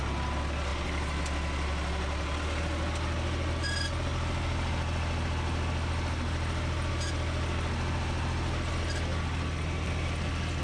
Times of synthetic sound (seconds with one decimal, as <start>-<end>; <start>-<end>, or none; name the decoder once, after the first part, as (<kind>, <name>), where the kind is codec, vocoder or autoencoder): none